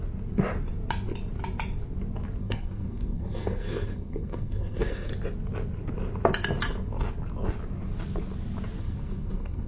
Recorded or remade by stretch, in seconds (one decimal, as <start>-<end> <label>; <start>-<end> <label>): 0.0-2.4 recorded; 2.4-5.1 remade; 5.1-8.8 recorded; 8.8-9.7 remade

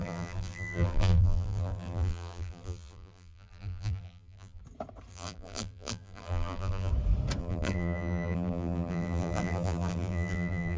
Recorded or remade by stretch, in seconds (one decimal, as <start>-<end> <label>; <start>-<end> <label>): 0.0-4.6 remade; 4.6-5.1 recorded; 5.1-6.9 remade; 6.9-7.4 recorded; 7.4-10.8 remade

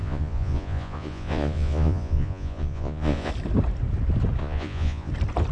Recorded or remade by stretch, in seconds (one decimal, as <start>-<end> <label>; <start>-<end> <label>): 0.0-3.3 remade; 3.3-4.4 recorded; 4.4-5.1 remade; 5.1-5.5 recorded

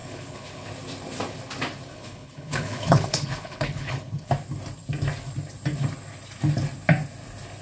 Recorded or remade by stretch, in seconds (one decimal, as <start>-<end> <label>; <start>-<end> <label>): 0.0-0.7 remade; 0.7-1.9 recorded; 1.9-4.3 remade; 4.3-7.6 recorded

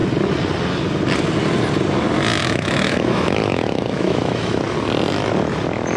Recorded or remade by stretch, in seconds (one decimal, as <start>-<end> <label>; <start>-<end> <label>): 0.0-2.4 recorded; 2.4-4.6 remade; 4.6-6.0 recorded